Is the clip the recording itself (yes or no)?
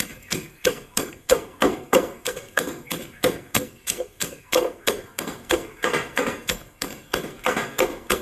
no